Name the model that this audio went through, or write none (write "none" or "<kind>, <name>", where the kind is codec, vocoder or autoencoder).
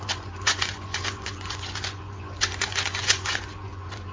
vocoder, Vocos